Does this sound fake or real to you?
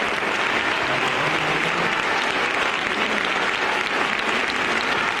real